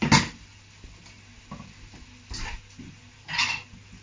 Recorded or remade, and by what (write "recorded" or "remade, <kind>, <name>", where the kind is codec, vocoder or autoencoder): recorded